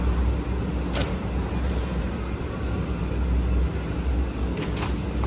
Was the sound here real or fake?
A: real